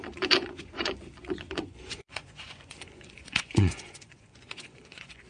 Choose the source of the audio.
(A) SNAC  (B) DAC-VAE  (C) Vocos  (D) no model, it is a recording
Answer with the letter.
C